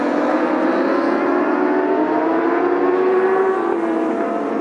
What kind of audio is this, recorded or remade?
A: recorded